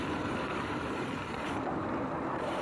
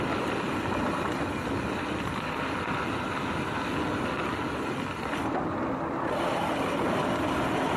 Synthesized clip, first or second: first